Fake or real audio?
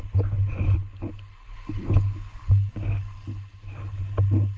real